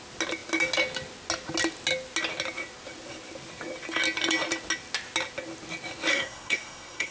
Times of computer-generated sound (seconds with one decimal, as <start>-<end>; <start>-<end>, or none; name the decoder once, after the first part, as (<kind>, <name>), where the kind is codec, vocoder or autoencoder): 6.1-7.1 (codec, SNAC)